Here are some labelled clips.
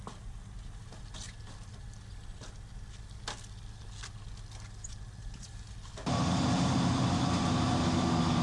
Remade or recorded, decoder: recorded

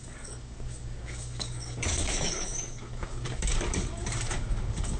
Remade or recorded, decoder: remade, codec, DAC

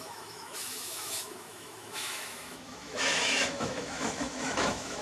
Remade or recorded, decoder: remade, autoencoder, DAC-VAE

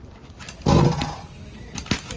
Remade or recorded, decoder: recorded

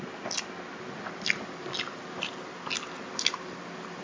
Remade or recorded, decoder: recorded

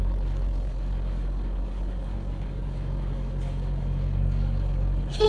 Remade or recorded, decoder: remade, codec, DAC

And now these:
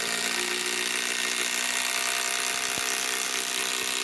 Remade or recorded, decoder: recorded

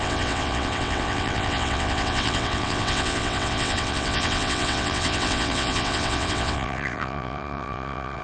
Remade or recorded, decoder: remade, vocoder, WaveNeXt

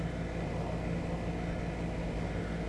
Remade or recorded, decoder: recorded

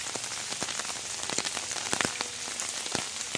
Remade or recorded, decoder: recorded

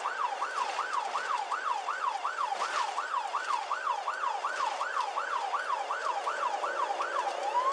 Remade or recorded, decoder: recorded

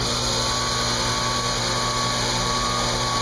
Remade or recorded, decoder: recorded